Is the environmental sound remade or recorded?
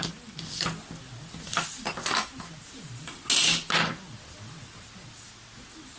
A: recorded